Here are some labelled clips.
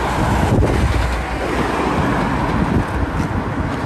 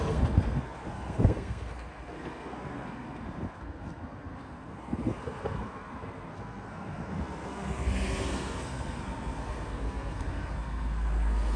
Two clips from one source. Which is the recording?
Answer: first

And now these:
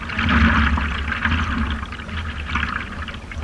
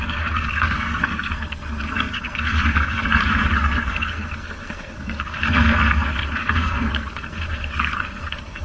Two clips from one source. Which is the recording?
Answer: first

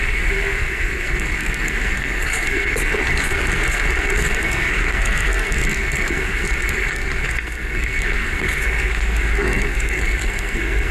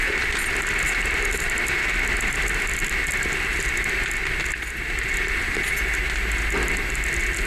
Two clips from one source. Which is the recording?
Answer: second